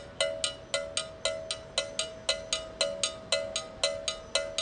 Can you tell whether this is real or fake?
real